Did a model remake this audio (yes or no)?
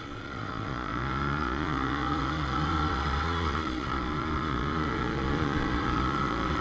yes